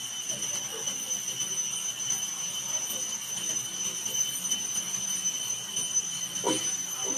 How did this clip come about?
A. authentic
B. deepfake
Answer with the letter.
A